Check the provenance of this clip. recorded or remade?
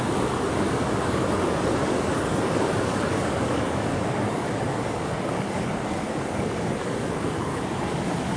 remade